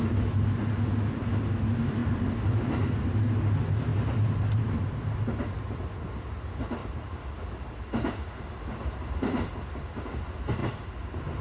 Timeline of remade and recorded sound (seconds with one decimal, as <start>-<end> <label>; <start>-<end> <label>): 0.0-2.0 recorded; 2.0-2.8 remade; 2.8-3.9 recorded; 3.9-4.8 remade; 4.8-6.8 recorded; 6.8-10.0 remade; 10.0-10.6 recorded; 10.6-11.4 remade